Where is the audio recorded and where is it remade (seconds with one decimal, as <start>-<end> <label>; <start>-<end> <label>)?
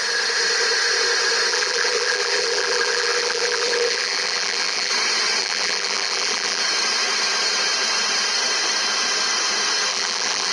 0.0-1.5 recorded; 1.5-4.9 remade; 4.9-5.4 recorded; 5.4-6.6 remade; 6.6-9.9 recorded; 9.9-10.5 remade